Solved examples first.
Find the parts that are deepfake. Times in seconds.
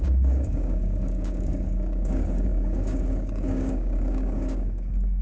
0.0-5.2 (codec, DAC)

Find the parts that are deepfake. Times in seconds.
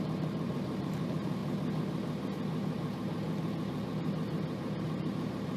0.0-1.4 (vocoder, BigVGAN v2); 4.8-5.6